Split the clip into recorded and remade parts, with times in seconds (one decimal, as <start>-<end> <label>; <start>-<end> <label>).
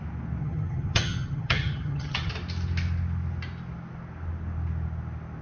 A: 0.0-0.4 recorded; 0.4-2.3 remade; 2.3-5.4 recorded